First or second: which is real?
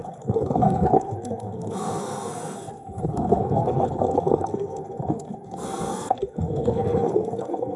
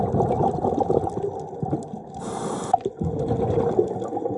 second